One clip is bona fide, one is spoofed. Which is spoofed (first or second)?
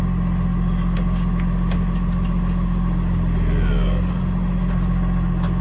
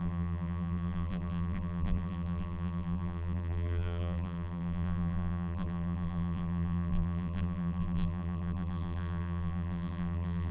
second